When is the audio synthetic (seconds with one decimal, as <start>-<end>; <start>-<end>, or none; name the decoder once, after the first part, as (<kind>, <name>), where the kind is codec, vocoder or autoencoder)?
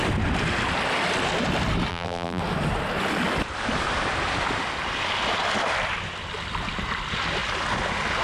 1.9-2.4 (vocoder, BigVGAN v2)